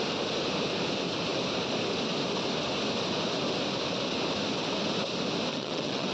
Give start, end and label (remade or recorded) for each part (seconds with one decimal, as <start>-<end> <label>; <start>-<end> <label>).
0.0-5.5 recorded; 5.5-6.1 remade